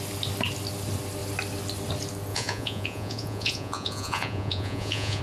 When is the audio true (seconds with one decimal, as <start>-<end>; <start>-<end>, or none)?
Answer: 0.0-2.3

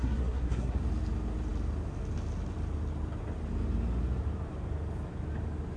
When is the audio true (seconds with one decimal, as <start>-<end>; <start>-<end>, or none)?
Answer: 0.8-5.8

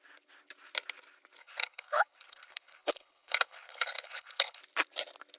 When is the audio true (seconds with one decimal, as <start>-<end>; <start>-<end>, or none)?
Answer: 0.0-1.4; 4.6-5.4

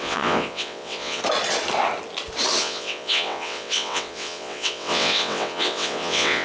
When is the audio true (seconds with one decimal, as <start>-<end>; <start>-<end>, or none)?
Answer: 1.2-2.6

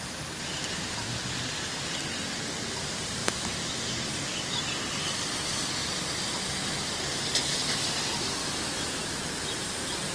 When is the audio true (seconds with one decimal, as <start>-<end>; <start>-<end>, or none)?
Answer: 0.0-3.2; 3.9-8.4; 9.2-10.1

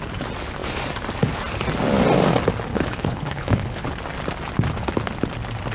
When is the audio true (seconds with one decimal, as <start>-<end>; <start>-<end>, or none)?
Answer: 0.0-2.7; 3.9-5.7